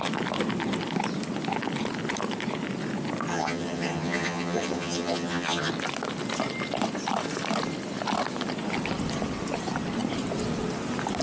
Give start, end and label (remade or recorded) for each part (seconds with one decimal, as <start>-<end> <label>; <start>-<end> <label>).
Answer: 0.0-3.3 recorded; 3.3-5.7 remade; 5.7-11.2 recorded